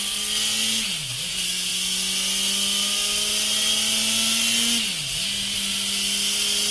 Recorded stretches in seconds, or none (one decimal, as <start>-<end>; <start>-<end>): 0.0-6.7